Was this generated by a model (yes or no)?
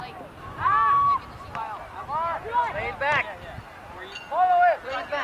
no